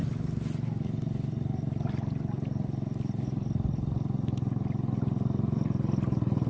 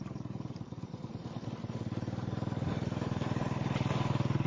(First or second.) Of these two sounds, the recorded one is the first